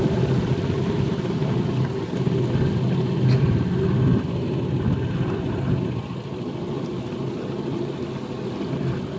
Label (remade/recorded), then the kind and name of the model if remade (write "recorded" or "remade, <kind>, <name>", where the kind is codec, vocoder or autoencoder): recorded